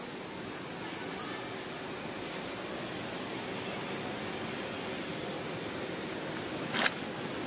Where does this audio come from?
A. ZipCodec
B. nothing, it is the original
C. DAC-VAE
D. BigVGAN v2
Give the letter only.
B